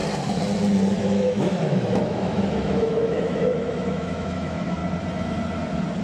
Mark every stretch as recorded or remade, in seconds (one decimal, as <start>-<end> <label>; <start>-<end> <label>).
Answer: 0.0-1.0 recorded; 1.0-4.8 remade; 4.8-6.0 recorded